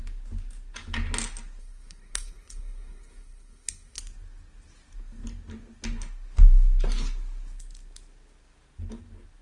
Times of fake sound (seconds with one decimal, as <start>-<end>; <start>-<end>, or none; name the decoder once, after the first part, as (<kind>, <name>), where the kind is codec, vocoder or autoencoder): 1.6-4.0 (codec, SNAC)